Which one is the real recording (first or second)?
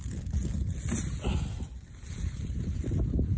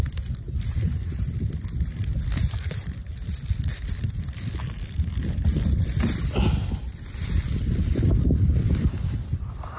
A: first